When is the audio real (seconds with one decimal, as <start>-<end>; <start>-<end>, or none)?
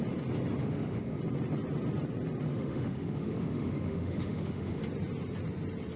0.0-0.6; 1.2-2.5; 4.8-6.0